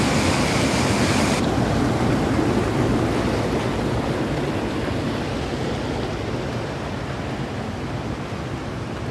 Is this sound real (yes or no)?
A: yes